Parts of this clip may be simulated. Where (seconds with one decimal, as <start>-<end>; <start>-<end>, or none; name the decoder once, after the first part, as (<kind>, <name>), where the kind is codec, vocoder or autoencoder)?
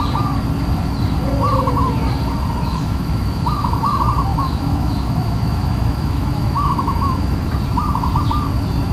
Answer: 2.7-3.8 (autoencoder, DAC-VAE); 4.3-7.5